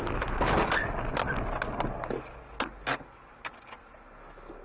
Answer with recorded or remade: recorded